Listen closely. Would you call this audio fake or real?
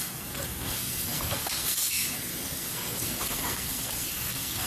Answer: fake